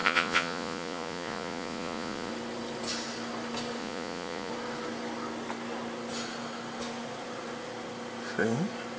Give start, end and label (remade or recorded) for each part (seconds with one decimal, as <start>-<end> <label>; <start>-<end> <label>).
0.0-2.3 remade; 2.3-3.8 recorded; 3.8-4.5 remade; 4.5-9.0 recorded